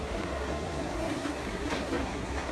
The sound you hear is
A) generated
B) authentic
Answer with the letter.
A